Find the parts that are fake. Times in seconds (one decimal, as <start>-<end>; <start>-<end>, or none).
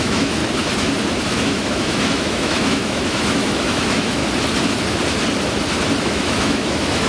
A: 0.0-0.4; 1.2-4.2; 6.0-7.1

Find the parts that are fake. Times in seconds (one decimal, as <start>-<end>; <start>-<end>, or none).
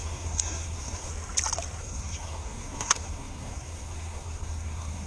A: 0.0-1.1; 1.8-5.1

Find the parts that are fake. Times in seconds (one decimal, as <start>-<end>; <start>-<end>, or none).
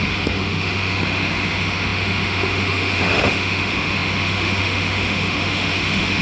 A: 0.0-6.2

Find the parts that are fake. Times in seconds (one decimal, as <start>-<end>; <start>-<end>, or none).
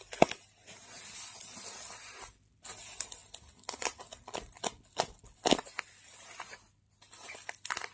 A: none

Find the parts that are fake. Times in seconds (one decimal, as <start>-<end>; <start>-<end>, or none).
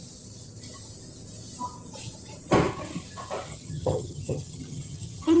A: 3.5-5.4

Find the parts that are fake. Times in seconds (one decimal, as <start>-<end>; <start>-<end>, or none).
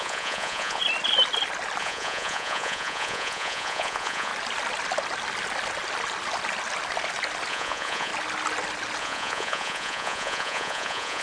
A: 0.0-0.8; 1.8-4.3; 7.5-8.1; 9.0-11.2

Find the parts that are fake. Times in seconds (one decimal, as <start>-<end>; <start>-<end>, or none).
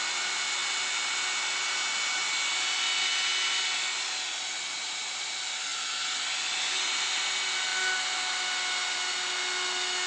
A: none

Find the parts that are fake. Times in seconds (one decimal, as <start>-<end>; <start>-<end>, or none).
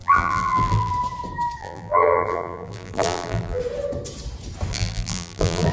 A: 0.0-0.9; 1.6-3.6; 4.7-5.7